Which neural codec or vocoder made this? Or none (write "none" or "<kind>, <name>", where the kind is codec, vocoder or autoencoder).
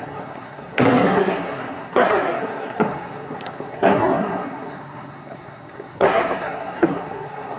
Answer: codec, SNAC